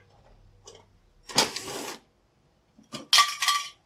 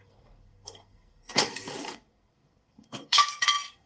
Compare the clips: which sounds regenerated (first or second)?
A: second